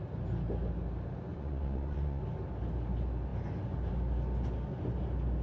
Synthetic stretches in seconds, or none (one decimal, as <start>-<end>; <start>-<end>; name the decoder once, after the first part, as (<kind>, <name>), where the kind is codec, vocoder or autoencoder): 1.3-2.2 (vocoder, Vocos)